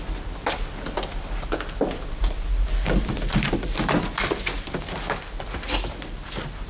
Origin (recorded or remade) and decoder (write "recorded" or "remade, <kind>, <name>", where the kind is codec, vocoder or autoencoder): recorded